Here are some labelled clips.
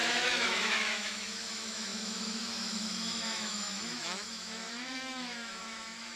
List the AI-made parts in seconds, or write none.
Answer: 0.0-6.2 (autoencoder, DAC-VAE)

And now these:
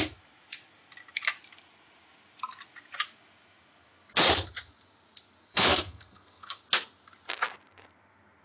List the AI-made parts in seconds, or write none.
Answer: 5.4-6.6 (codec, SNAC)

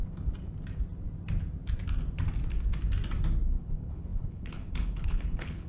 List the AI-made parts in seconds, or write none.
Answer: 3.4-5.7 (codec, HILCodec)